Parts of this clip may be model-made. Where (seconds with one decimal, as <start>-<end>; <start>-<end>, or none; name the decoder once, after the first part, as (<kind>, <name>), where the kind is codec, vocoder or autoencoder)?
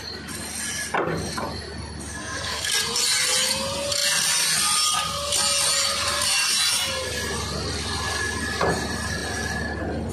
2.1-2.7 (codec, SNAC)